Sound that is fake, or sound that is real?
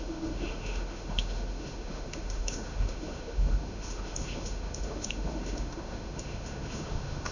fake